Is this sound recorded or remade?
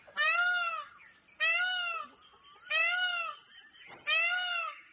recorded